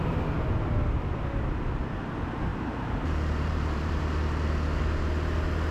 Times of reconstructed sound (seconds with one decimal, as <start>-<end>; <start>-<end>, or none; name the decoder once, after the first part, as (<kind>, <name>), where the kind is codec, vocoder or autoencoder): 2.5-4.0 (vocoder, BigVGAN v2)